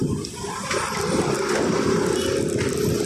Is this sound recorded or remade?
recorded